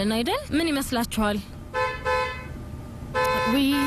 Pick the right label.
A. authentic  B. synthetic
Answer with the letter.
A